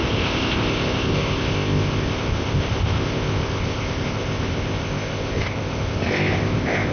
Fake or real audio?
fake